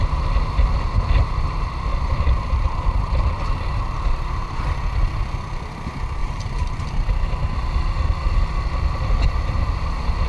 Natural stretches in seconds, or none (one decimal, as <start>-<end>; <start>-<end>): 0.0-1.9; 4.6-6.2; 6.8-10.3